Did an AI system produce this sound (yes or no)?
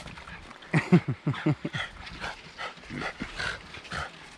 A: no